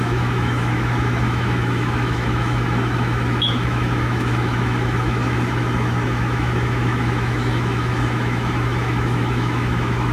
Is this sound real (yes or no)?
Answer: no